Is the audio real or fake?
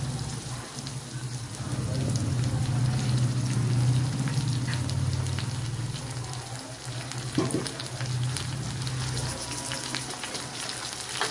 real